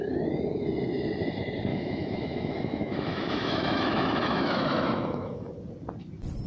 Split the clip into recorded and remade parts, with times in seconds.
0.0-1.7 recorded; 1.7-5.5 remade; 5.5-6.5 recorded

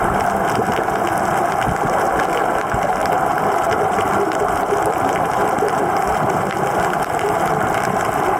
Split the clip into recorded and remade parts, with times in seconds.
0.0-3.0 recorded; 3.0-8.0 remade; 8.0-8.4 recorded

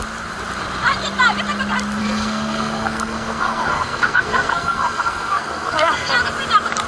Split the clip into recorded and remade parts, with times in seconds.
0.0-2.0 recorded; 2.0-6.1 remade; 6.1-6.9 recorded

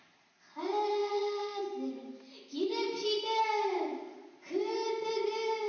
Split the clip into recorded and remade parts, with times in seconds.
0.0-1.0 recorded; 1.0-1.6 remade; 1.6-5.7 recorded

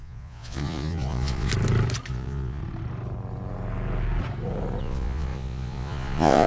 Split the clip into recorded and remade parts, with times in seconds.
0.0-1.5 remade; 1.5-2.1 recorded; 2.1-2.6 remade; 2.6-4.8 recorded; 4.8-6.5 remade